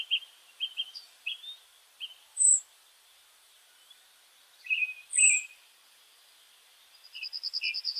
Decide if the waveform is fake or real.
fake